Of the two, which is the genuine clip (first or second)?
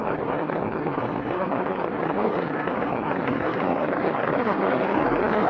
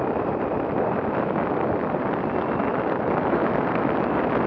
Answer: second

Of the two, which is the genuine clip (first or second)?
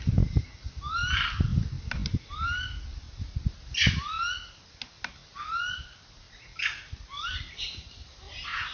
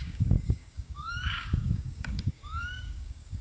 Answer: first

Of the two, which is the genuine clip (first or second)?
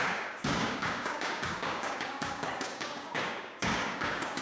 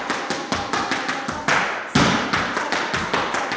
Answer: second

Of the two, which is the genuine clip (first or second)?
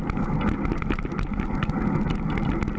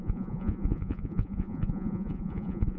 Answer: first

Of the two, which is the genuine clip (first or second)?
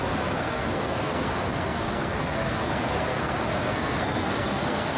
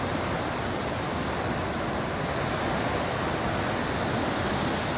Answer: second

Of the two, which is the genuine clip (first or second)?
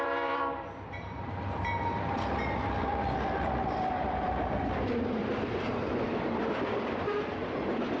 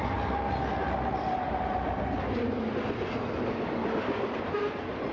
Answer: second